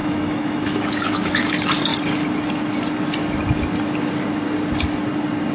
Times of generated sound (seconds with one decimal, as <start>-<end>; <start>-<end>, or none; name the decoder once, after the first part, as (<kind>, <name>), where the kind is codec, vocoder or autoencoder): 0.0-1.5 (autoencoder, DAC-VAE)